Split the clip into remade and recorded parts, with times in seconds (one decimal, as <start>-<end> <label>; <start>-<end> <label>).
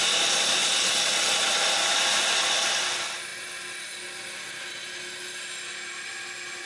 0.0-6.7 recorded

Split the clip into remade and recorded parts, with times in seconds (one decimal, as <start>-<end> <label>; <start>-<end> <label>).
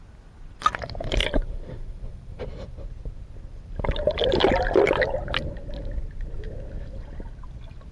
0.0-1.2 recorded; 1.2-2.4 remade; 2.4-7.9 recorded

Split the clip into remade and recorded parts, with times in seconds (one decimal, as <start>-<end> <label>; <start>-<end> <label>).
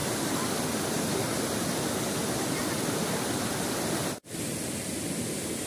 0.0-4.0 recorded; 4.0-5.3 remade; 5.3-5.7 recorded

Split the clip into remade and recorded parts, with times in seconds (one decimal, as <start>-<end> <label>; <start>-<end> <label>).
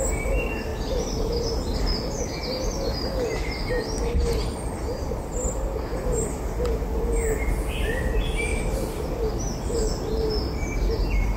0.0-0.7 recorded; 0.7-2.2 remade; 2.2-8.5 recorded; 8.5-9.3 remade; 9.3-11.4 recorded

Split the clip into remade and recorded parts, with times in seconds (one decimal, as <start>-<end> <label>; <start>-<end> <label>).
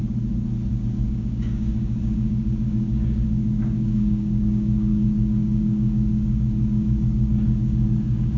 0.0-0.7 recorded; 0.7-8.4 remade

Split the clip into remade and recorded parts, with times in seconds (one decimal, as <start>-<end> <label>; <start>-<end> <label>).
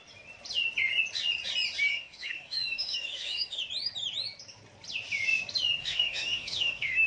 0.0-1.9 recorded; 1.9-3.6 remade; 3.6-5.8 recorded; 5.8-7.1 remade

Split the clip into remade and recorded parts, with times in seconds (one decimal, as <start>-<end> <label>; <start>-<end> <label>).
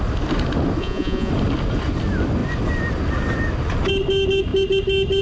0.0-0.8 recorded; 0.8-1.3 remade; 1.3-5.2 recorded